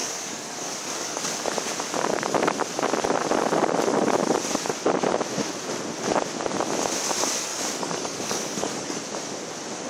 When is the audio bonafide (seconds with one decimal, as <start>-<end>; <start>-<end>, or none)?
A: 1.2-7.5; 9.0-9.9